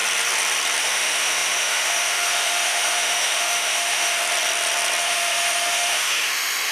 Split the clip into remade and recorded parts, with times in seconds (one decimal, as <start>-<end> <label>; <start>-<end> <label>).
0.0-0.8 recorded; 0.8-4.2 remade; 4.2-5.0 recorded; 5.0-6.7 remade